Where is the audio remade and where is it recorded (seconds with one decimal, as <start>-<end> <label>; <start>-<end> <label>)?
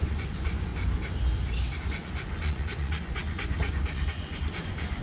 0.0-0.7 remade; 0.7-1.8 recorded; 1.8-5.0 remade